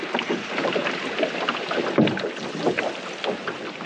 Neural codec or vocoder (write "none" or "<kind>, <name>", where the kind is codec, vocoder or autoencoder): none